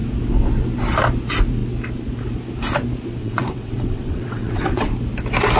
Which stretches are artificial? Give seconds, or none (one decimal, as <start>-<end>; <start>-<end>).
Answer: 3.2-4.9